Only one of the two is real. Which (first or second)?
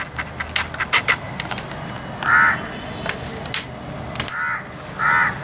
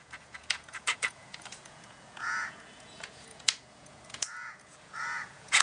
first